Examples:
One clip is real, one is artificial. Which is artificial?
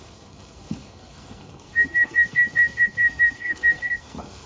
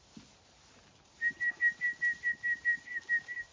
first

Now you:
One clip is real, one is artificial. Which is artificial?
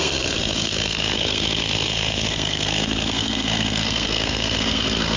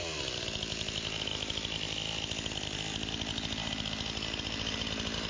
first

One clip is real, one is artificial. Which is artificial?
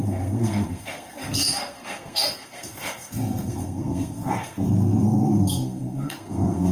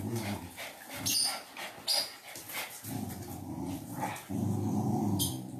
first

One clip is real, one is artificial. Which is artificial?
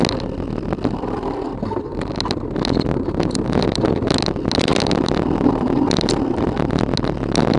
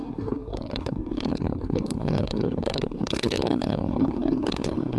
second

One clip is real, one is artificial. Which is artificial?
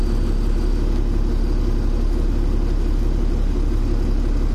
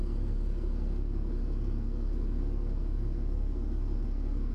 second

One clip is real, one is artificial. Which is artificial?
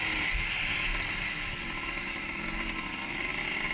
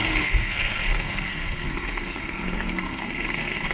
second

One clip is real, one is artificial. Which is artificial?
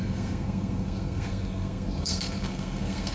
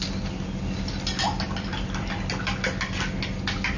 first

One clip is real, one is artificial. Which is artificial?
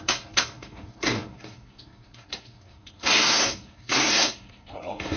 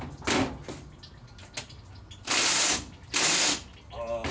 first